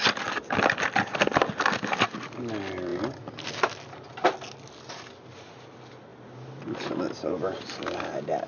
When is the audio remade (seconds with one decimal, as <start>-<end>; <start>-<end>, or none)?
none